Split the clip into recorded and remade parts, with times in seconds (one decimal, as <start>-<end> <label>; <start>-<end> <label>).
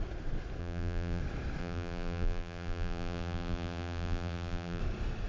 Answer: 0.0-0.6 recorded; 0.6-1.2 remade; 1.2-1.6 recorded; 1.6-4.8 remade; 4.8-5.3 recorded